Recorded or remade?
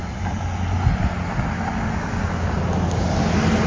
recorded